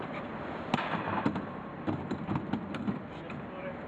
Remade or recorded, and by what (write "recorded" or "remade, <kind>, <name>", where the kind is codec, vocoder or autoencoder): remade, vocoder, BigVGAN v2